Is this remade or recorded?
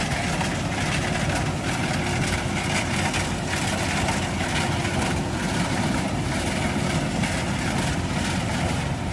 recorded